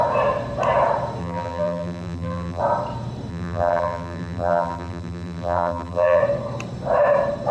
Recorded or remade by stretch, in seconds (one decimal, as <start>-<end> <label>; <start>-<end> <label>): 0.0-1.2 recorded; 1.2-2.6 remade; 2.6-3.3 recorded; 3.3-6.2 remade; 6.2-7.5 recorded